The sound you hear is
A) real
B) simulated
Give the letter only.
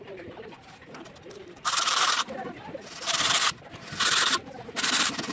B